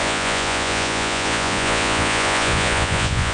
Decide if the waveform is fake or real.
fake